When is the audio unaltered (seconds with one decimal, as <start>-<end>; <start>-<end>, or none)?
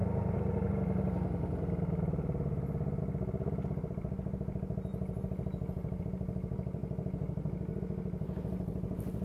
3.0-9.2